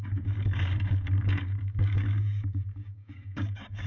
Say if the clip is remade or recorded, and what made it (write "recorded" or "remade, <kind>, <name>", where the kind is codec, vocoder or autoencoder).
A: remade, codec, DAC